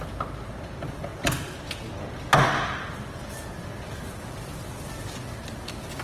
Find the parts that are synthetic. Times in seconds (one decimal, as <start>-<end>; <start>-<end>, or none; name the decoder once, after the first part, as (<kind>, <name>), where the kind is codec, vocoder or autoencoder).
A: none